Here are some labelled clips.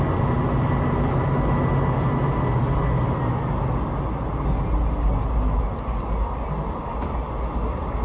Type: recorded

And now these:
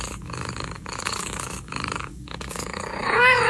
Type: remade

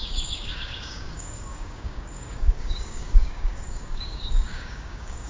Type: remade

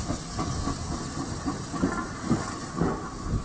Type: recorded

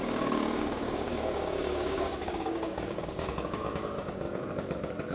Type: remade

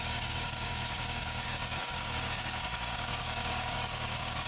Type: remade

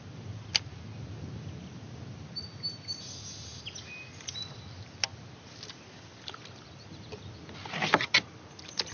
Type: recorded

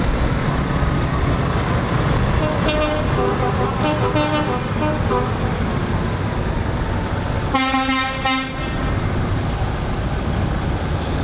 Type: recorded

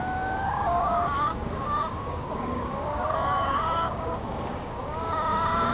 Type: remade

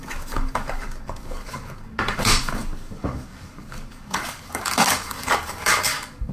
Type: remade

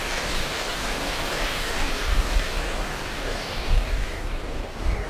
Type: remade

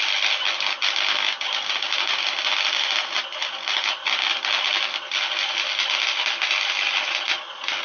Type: recorded